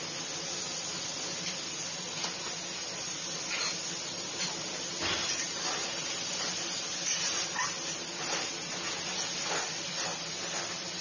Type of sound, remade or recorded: recorded